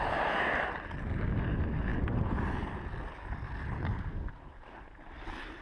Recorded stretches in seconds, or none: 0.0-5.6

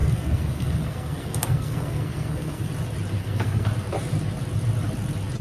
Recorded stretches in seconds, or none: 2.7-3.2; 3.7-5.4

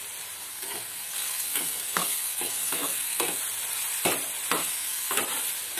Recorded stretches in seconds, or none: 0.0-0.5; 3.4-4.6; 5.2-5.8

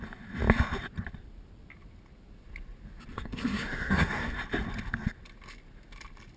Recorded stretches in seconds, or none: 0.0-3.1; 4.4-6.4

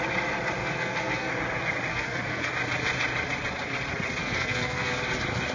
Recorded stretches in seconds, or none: 0.0-0.6; 1.3-1.9; 2.5-4.2; 5.0-5.5

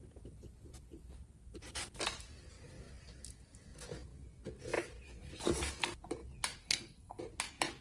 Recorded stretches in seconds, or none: 0.0-6.6; 7.2-7.8

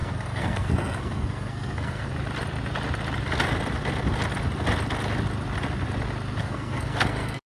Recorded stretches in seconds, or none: 2.1-6.4